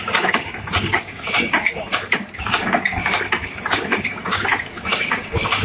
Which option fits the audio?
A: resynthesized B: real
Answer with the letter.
A